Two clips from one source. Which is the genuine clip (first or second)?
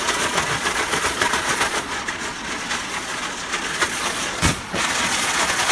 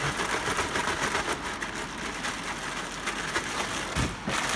second